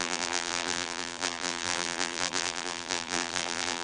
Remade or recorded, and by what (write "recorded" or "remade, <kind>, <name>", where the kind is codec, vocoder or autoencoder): remade, vocoder, BigVGAN v2